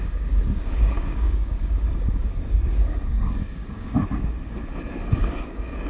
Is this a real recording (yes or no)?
no